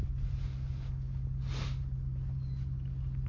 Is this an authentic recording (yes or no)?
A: yes